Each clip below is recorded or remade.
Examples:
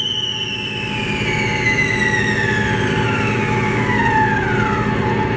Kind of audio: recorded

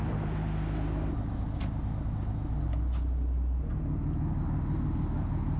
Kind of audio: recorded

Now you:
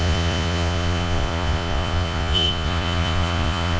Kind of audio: remade